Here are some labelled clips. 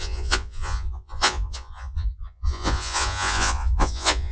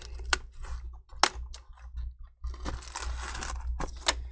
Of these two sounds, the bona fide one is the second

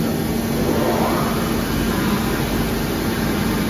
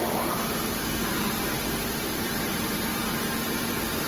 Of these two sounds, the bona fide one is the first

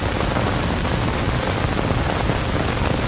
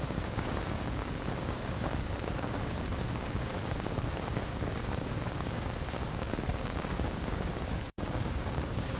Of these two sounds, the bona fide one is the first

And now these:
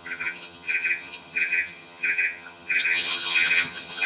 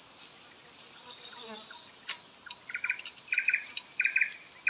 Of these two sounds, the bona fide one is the second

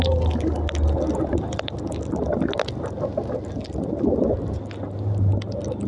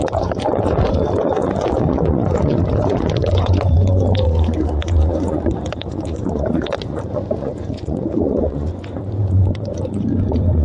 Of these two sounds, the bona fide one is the first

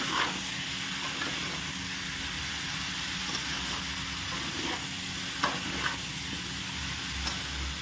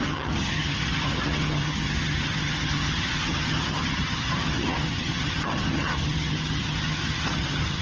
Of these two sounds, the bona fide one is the first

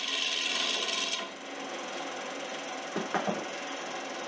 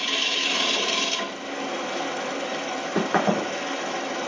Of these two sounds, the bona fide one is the first